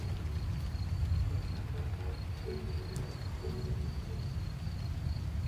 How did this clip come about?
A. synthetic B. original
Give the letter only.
B